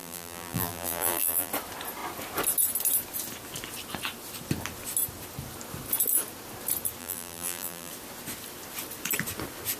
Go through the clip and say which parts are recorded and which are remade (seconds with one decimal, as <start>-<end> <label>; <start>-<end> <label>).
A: 0.0-1.5 remade; 1.5-7.0 recorded; 7.0-7.9 remade; 7.9-9.8 recorded